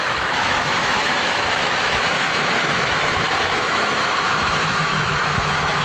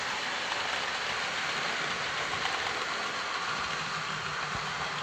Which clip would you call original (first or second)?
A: second